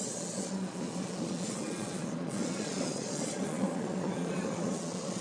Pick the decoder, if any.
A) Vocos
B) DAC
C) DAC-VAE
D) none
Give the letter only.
A